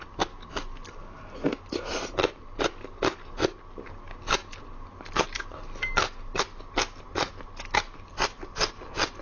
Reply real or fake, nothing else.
real